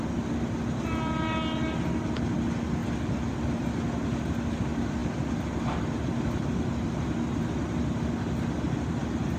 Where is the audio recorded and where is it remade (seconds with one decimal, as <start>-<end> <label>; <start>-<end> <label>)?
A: 0.0-9.4 recorded